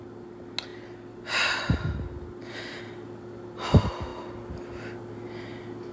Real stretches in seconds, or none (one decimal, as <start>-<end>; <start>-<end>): 0.0-5.9